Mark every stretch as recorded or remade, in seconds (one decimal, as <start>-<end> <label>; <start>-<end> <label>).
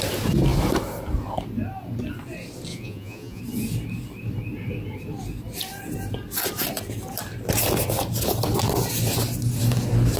0.0-2.7 recorded; 2.7-3.4 remade; 3.4-10.2 recorded